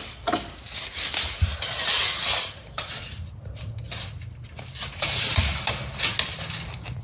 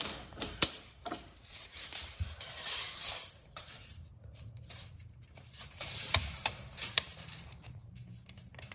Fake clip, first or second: second